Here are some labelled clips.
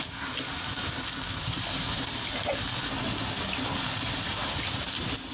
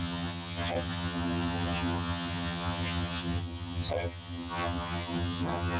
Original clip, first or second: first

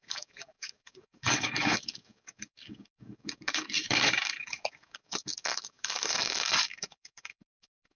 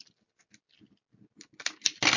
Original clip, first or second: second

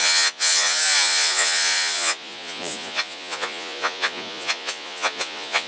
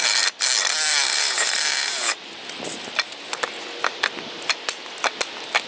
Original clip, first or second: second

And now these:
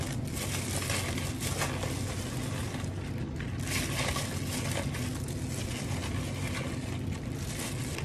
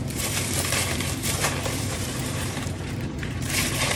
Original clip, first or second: first